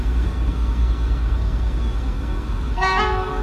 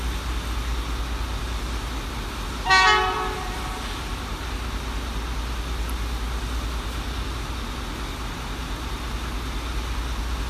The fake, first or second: first